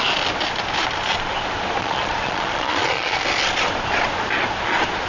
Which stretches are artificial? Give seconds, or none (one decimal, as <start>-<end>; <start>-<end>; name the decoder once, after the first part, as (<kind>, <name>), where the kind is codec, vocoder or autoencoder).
1.8-3.2 (vocoder, Vocos)